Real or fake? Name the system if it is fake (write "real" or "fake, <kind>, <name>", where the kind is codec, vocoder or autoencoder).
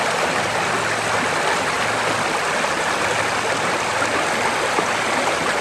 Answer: real